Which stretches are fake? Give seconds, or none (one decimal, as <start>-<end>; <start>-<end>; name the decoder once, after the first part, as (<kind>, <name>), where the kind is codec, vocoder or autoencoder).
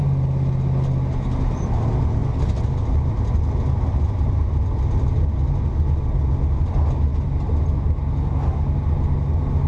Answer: none